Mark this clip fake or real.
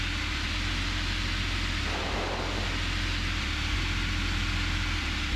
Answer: real